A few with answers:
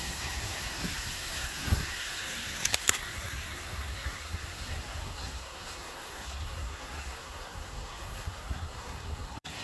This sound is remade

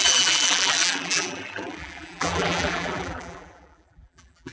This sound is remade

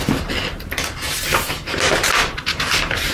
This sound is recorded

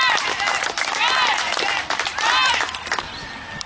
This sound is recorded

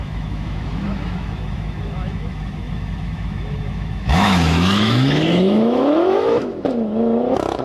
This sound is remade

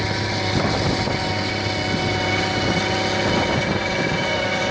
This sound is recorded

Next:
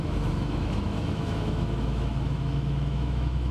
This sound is remade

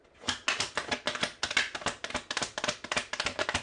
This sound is recorded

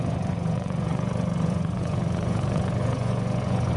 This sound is remade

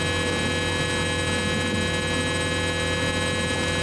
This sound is recorded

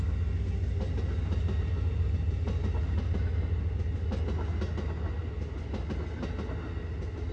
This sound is recorded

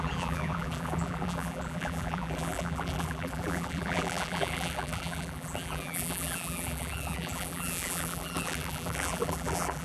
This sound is remade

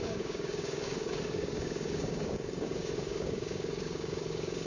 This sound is remade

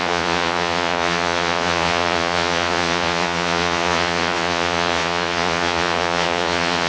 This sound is remade